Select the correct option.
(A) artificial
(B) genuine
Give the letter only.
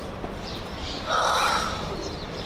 A